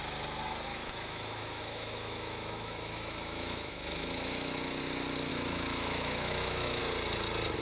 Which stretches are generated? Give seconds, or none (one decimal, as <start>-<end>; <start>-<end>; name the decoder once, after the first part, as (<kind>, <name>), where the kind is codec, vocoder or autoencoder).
0.7-4.8 (autoencoder, DAC-VAE); 5.3-6.8